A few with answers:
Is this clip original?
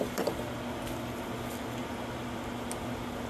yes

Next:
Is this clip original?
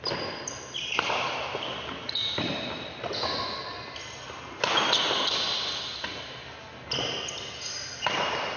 yes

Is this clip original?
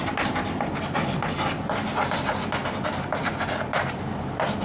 yes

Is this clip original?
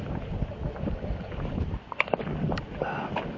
yes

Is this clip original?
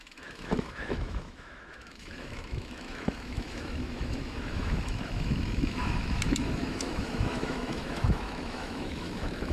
no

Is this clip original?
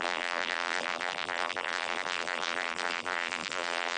no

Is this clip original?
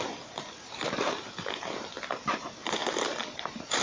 yes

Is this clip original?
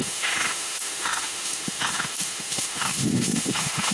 no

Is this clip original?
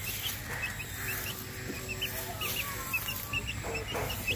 yes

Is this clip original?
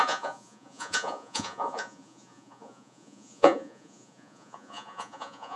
no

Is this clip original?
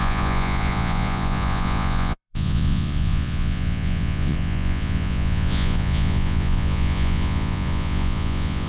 no